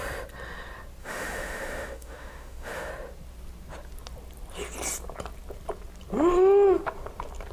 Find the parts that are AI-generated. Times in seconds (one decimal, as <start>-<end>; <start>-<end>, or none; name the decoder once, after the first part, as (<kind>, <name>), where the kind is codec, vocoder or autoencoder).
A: 1.0-2.9 (autoencoder, DAC-VAE)